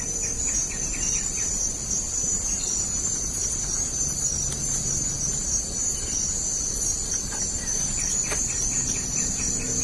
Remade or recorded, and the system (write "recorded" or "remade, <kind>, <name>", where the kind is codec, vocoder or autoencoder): recorded